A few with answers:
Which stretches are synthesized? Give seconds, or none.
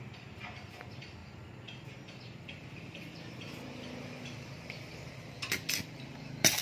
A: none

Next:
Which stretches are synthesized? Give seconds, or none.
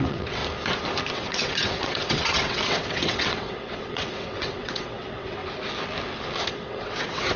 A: 0.0-0.4 (vocoder, WaveNeXt); 1.1-5.4; 6.5-7.4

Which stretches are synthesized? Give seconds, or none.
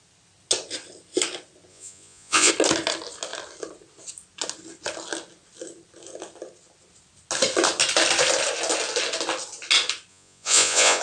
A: 1.7-2.5 (vocoder, Vocos); 10.1-11.0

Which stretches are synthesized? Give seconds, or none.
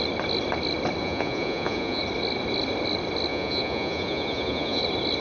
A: 1.0-2.0 (vocoder, Vocos); 3.3-4.8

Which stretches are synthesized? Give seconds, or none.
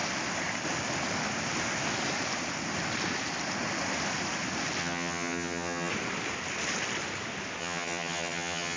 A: 4.8-5.9 (vocoder, HiFi-GAN); 7.6-8.8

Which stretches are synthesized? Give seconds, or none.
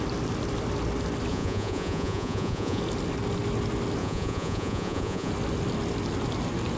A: 1.3-2.8 (vocoder, Vocos); 4.0-5.3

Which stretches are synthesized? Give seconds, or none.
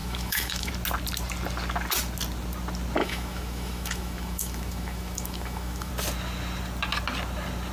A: 0.0-0.7 (autoencoder, DAC-VAE); 3.0-5.9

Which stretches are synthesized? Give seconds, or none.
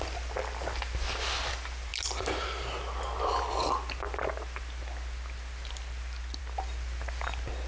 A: none